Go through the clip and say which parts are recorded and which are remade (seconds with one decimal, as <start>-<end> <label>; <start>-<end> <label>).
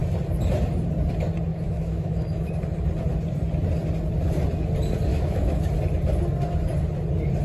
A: 0.0-1.5 recorded; 1.5-2.5 remade; 2.5-5.1 recorded; 5.1-5.6 remade; 5.6-7.4 recorded